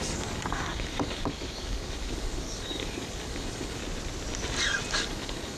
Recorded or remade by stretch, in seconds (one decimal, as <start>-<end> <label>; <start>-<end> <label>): 0.0-3.8 remade; 3.8-4.9 recorded; 4.9-5.6 remade